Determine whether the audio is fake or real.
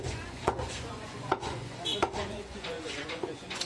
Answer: fake